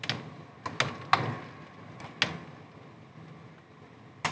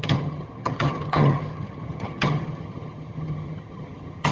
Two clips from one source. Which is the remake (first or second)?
second